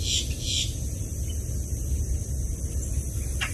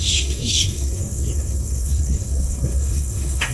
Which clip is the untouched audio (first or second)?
first